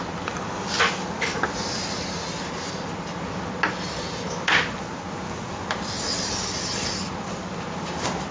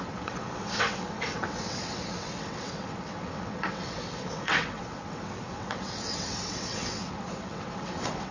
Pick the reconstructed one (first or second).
second